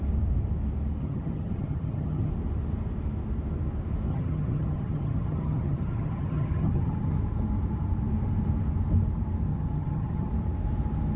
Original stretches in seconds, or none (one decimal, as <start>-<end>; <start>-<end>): 0.0-1.0; 2.3-4.1; 7.2-9.5; 10.3-11.2